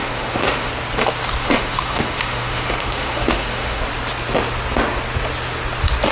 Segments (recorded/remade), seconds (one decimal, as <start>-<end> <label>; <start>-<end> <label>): 0.0-0.7 remade; 0.7-1.4 recorded; 1.4-3.8 remade; 3.8-6.1 recorded

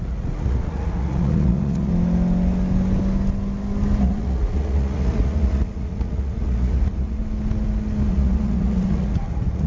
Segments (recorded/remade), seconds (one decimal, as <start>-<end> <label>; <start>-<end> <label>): 0.0-1.9 remade; 1.9-4.0 recorded; 4.0-7.2 remade; 7.2-8.1 recorded; 8.1-9.7 remade

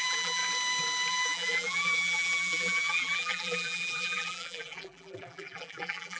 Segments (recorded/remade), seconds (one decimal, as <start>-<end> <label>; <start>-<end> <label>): 0.0-0.4 remade; 0.4-1.1 recorded; 1.1-6.2 remade

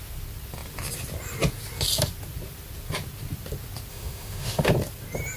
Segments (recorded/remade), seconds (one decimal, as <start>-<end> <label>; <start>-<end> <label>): 0.0-3.9 recorded; 3.9-4.7 remade; 4.7-5.4 recorded

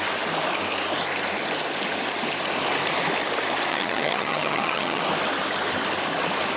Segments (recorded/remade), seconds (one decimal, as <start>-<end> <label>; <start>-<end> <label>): 0.0-3.7 recorded; 3.7-5.0 remade; 5.0-6.6 recorded